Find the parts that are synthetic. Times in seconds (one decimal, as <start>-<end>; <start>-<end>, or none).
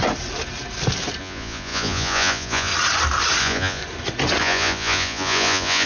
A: 1.2-2.7; 3.4-3.8; 4.4-5.9